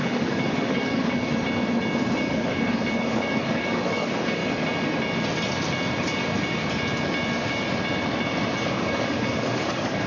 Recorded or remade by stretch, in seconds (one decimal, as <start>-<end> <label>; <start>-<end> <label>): 0.0-1.3 remade; 1.3-2.2 recorded; 2.2-4.4 remade; 4.4-8.7 recorded; 8.7-10.1 remade